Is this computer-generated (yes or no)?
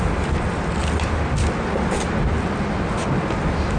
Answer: no